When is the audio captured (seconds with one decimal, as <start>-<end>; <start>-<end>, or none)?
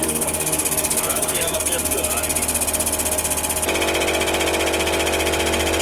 2.1-5.8